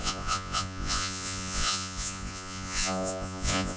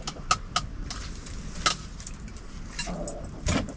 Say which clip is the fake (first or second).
first